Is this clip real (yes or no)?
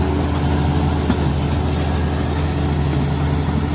yes